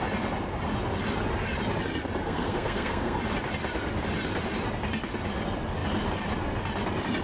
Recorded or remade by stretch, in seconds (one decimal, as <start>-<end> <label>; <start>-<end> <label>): 0.0-2.2 recorded; 2.2-3.2 remade; 3.2-7.2 recorded